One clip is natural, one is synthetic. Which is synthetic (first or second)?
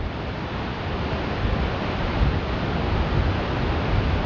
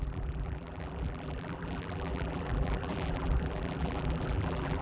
second